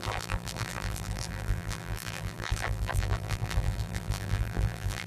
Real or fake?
fake